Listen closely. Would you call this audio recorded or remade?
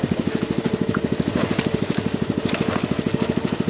recorded